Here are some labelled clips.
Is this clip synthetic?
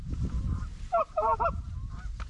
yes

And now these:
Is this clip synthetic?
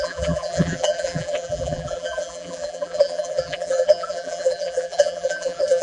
yes